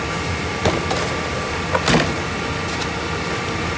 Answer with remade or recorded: recorded